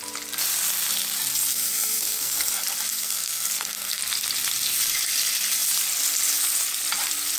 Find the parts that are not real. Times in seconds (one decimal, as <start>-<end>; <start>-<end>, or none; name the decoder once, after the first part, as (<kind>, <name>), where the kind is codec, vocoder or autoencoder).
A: 1.5-2.5 (codec, SNAC); 2.9-4.0